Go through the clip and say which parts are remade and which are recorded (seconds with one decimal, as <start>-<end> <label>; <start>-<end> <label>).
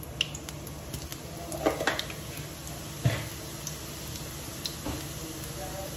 0.0-6.0 recorded